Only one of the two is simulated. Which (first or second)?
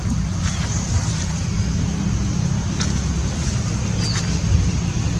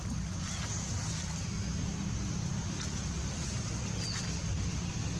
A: second